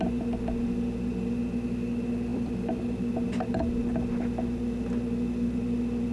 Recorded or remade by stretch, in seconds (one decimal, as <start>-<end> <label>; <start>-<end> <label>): 0.0-2.3 recorded; 2.3-3.0 remade; 3.0-6.1 recorded